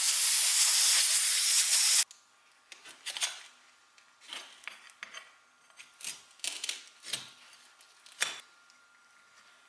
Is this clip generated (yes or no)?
no